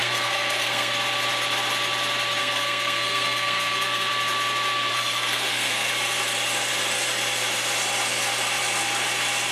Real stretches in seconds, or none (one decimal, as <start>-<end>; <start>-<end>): 0.9-2.4; 4.1-4.9; 5.9-9.5